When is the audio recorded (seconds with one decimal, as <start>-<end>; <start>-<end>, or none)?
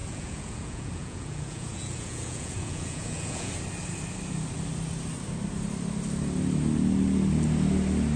3.5-8.2